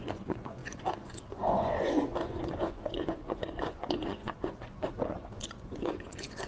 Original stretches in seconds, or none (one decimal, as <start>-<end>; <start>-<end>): none